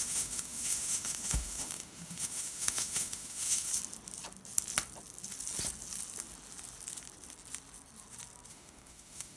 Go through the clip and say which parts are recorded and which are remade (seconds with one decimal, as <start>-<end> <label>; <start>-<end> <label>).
0.0-3.7 remade; 3.7-8.5 recorded; 8.5-9.4 remade